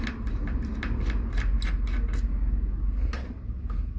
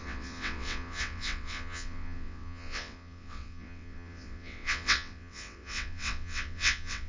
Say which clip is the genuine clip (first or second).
first